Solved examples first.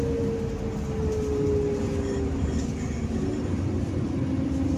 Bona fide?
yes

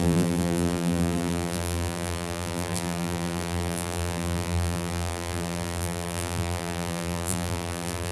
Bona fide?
no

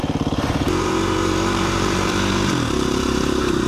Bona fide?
no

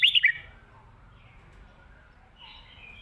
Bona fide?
no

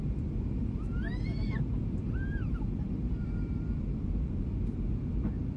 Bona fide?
no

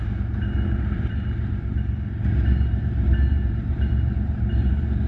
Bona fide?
no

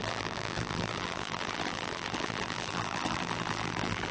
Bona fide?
no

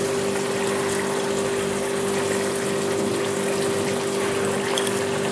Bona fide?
yes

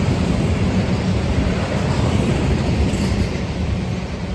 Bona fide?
no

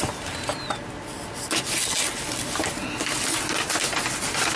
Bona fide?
yes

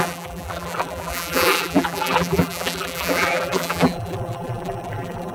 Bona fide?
no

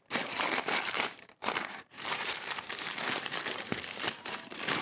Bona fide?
no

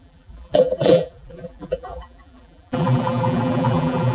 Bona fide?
no